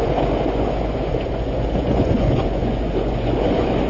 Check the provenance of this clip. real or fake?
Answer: fake